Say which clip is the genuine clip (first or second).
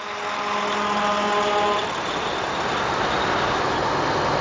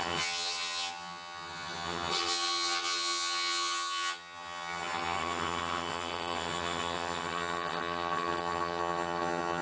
first